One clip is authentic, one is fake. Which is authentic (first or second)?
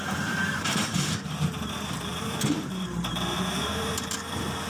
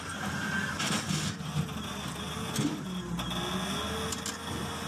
second